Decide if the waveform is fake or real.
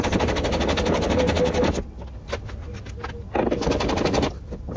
real